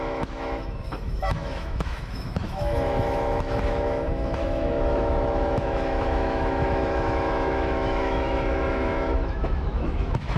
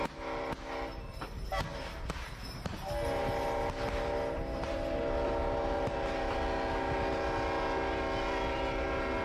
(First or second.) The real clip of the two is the second